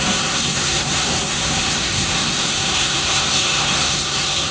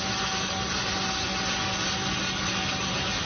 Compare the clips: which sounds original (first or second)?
second